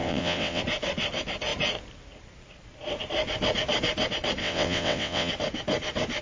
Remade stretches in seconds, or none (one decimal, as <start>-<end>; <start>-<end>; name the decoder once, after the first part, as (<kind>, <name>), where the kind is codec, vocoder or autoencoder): 0.0-0.6 (vocoder, WaveNeXt); 4.4-5.3